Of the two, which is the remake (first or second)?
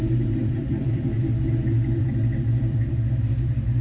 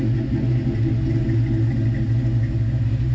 first